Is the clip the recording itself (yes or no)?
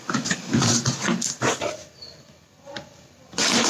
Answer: yes